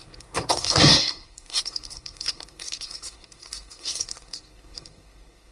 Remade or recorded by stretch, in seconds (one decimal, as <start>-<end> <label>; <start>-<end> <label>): 0.0-5.5 remade

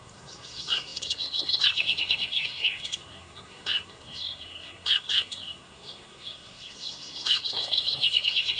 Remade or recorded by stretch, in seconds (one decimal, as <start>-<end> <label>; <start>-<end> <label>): 0.0-8.6 remade

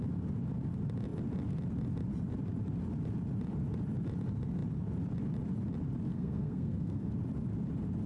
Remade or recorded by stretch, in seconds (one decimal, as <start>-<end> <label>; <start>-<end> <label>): 0.0-6.1 recorded; 6.1-7.1 remade; 7.1-8.1 recorded

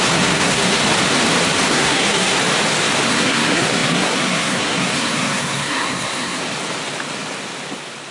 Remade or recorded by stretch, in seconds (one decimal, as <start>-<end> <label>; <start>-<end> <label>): 0.0-0.8 remade; 0.8-1.7 recorded; 1.7-2.4 remade; 2.4-3.1 recorded; 3.1-6.4 remade; 6.4-8.1 recorded

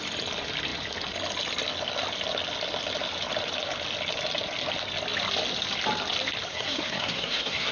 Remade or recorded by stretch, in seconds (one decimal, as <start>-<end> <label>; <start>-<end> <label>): 0.0-6.5 recorded; 6.5-7.7 remade

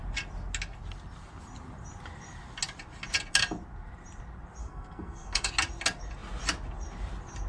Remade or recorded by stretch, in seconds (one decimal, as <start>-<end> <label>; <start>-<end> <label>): 0.0-4.6 recorded; 4.6-5.5 remade; 5.5-7.5 recorded

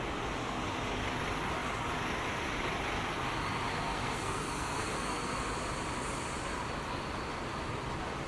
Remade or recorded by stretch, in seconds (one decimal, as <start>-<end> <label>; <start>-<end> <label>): 0.0-3.7 recorded; 3.7-5.4 remade; 5.4-8.3 recorded

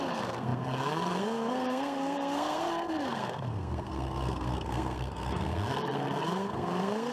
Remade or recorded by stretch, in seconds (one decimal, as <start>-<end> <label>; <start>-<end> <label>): 0.0-7.1 remade